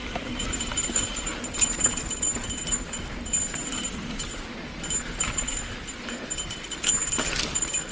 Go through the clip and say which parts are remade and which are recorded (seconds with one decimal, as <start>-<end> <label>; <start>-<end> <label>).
0.0-4.3 remade; 4.3-5.0 recorded; 5.0-7.9 remade